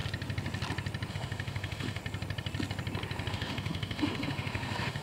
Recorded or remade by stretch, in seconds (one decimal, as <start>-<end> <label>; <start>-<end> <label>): 0.0-1.1 recorded; 1.1-2.0 remade; 2.0-3.3 recorded; 3.3-5.0 remade